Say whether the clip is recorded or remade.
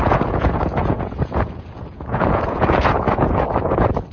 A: remade